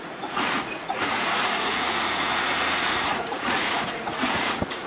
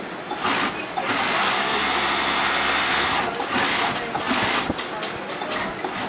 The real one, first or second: second